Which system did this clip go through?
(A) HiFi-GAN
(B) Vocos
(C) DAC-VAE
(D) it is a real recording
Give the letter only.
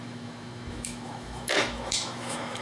C